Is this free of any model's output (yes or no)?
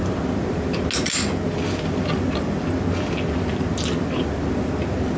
yes